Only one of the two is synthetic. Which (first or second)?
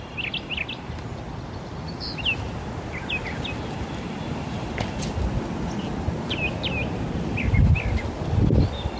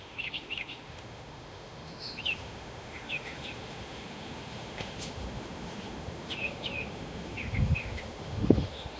second